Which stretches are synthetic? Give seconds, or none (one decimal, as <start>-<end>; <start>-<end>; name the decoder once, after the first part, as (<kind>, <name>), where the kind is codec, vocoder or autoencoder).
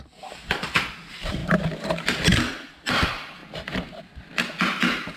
0.0-1.4 (vocoder, BigVGAN v2); 2.7-3.4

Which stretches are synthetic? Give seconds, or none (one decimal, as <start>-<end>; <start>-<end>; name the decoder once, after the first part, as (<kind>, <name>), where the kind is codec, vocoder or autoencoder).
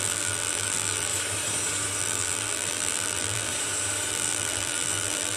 0.0-1.1 (vocoder, BigVGAN v2); 2.0-3.5; 4.1-5.4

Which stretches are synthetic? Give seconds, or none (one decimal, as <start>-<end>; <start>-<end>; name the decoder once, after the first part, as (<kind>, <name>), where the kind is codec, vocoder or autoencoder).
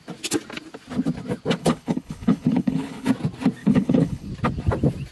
1.6-3.1 (codec, HILCodec); 3.6-4.3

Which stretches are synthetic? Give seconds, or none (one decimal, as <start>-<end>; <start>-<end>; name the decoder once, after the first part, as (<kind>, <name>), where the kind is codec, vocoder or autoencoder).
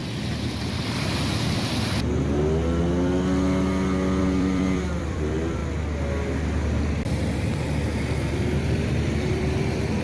4.2-5.6 (vocoder, BigVGAN v2); 8.3-10.0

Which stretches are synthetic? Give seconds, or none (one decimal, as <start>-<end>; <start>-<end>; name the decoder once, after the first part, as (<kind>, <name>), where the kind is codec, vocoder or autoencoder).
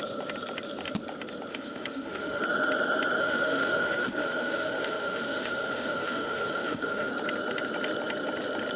1.5-2.4 (autoencoder, DAC-VAE); 3.2-7.1